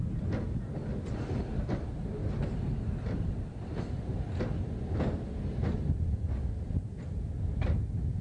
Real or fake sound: real